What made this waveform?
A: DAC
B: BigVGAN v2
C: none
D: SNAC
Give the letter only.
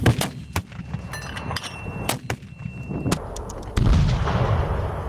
C